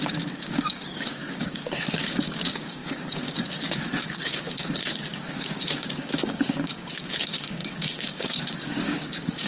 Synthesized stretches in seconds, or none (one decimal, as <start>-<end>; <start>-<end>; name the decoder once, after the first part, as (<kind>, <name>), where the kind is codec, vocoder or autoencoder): 0.0-9.5 (codec, DAC)

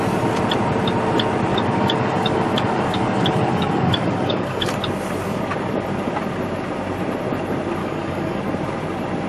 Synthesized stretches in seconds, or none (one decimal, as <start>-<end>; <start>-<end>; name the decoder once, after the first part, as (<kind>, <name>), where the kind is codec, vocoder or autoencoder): 1.5-4.7 (codec, DAC); 7.8-8.4

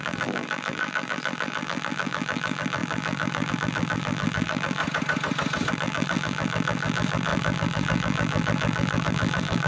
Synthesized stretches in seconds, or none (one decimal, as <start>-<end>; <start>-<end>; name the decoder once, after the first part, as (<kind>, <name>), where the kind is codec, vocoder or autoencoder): 0.0-4.8 (vocoder, BigVGAN v2); 5.7-9.7